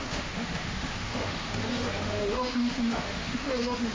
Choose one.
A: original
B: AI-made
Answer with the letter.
B